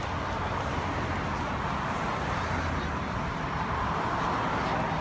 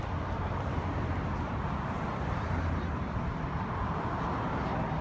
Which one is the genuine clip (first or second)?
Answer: first